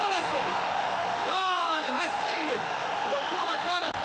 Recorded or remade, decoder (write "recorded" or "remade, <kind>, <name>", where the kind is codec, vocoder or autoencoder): remade, autoencoder, DAC-VAE